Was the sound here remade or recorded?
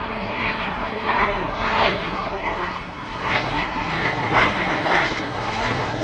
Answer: remade